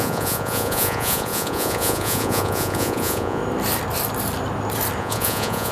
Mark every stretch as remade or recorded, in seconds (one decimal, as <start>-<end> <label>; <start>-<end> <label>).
0.0-3.4 remade; 3.4-5.0 recorded; 5.0-5.7 remade